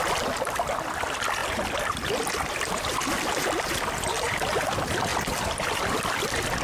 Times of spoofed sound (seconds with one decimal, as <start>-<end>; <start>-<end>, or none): 1.4-2.1; 5.1-6.1